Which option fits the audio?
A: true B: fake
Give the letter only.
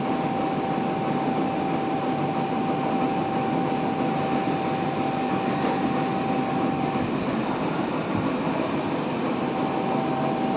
A